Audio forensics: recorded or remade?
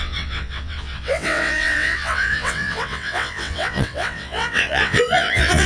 remade